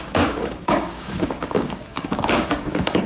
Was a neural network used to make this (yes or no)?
yes